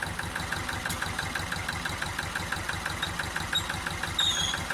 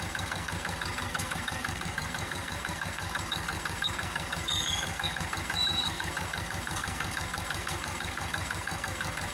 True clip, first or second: first